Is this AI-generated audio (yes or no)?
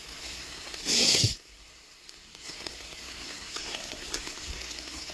yes